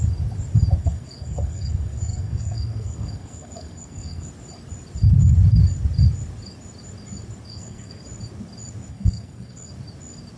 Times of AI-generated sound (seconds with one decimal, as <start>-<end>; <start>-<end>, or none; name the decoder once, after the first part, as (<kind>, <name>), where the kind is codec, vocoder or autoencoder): 0.8-4.3 (codec, SNAC); 7.5-8.0; 8.9-9.7